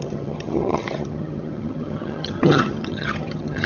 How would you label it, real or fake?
fake